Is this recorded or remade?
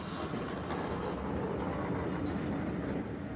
recorded